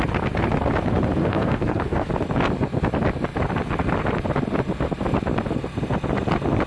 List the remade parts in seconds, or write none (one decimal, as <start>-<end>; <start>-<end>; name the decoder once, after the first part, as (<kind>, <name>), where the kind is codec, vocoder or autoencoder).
1.2-2.1 (codec, SNAC)